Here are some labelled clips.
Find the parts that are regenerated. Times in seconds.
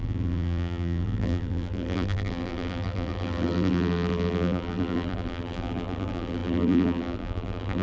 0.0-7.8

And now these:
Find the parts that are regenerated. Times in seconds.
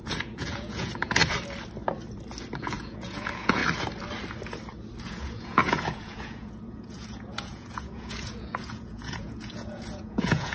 0.0-1.2; 2.6-3.6; 5.0-10.5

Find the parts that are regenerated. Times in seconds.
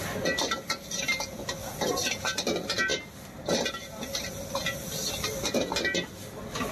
none